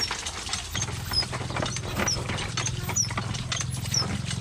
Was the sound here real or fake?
real